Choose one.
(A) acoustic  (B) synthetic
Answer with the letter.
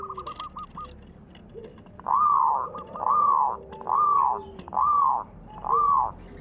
A